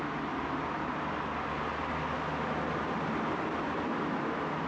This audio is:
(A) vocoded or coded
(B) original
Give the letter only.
B